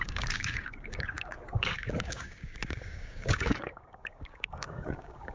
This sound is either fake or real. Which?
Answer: fake